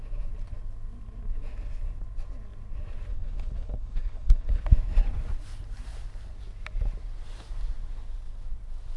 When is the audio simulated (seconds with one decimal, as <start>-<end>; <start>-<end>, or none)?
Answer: 3.1-4.6